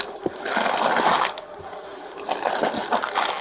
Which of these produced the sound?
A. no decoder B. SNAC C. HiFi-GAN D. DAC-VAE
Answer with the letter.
A